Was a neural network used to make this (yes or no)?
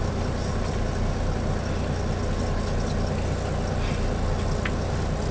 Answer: no